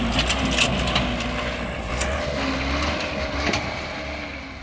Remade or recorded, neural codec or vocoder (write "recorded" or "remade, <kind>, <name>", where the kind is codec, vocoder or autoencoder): recorded